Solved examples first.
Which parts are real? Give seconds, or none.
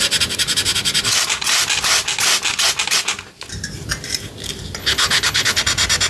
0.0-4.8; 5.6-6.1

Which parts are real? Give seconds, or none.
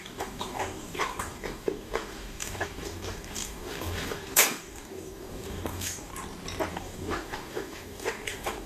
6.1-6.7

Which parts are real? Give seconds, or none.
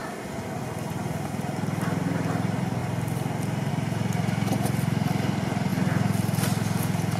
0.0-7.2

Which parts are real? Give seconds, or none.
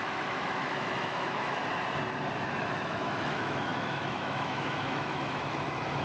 1.6-2.6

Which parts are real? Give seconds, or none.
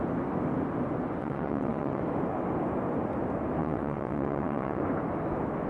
0.0-1.2; 2.0-3.6; 4.8-5.7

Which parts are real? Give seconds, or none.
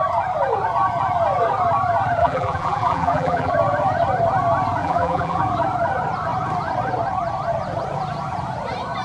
0.0-2.2; 3.5-4.8; 5.4-9.0